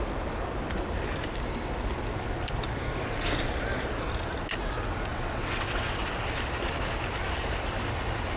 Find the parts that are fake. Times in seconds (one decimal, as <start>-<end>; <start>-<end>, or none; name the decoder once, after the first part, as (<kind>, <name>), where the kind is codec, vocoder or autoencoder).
5.1-6.0 (vocoder, WaveNeXt)